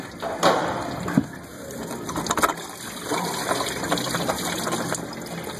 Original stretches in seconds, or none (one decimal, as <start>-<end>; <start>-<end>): 3.4-4.1